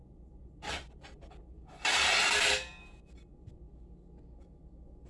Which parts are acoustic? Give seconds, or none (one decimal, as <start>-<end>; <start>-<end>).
3.1-5.1